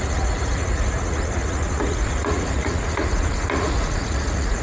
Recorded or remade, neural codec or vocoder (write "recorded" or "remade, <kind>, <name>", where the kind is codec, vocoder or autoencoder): remade, vocoder, Vocos